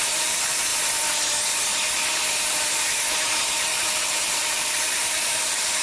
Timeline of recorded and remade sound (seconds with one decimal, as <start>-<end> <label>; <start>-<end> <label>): 0.0-0.7 remade; 0.7-3.4 recorded; 3.4-5.8 remade